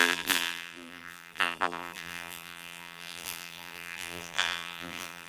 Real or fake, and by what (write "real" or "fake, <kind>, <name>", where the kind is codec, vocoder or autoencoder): fake, vocoder, BigVGAN v2